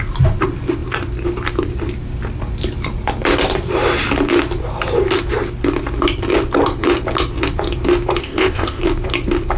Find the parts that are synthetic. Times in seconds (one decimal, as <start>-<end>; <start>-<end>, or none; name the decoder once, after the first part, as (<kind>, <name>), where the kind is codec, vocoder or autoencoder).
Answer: 8.2-8.8 (codec, ZipCodec)

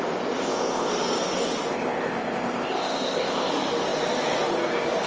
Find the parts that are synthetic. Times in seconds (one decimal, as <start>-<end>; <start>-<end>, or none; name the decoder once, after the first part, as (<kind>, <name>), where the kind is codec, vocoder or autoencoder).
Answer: 0.4-0.9 (codec, ZipCodec); 1.7-3.5

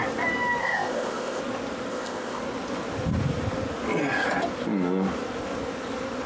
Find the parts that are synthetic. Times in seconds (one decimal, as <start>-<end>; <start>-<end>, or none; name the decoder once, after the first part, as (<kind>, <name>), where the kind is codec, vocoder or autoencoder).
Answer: 0.6-1.4 (codec, ZipCodec); 1.9-2.4

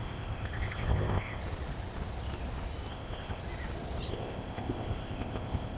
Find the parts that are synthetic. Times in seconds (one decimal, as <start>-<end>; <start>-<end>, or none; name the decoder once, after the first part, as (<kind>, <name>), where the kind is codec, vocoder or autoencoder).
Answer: 0.0-1.4 (codec, ZipCodec); 2.9-3.4; 4.1-5.8

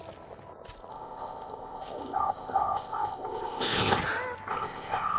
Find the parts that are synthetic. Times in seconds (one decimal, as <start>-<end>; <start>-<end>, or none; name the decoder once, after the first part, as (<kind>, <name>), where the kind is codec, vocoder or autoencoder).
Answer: 0.9-4.0 (codec, ZipCodec); 4.5-5.2

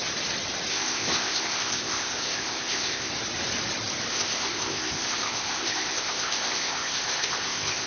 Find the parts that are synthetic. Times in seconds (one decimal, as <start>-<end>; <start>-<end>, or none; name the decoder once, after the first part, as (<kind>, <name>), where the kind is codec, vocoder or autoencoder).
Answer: 0.7-3.1 (codec, ZipCodec); 4.1-7.9

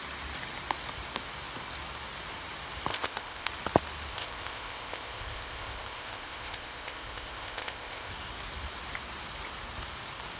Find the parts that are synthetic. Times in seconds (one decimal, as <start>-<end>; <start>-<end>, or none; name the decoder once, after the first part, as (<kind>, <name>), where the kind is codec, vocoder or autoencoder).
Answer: 2.9-3.5 (codec, ZipCodec); 4.1-8.1